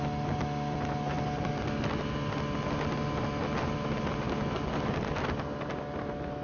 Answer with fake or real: real